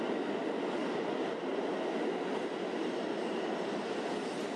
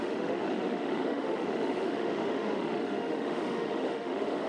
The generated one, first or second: second